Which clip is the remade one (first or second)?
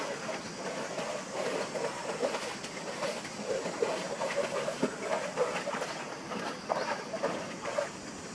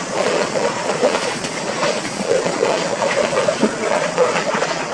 second